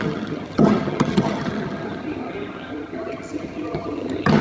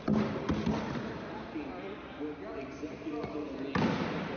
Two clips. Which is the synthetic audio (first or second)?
first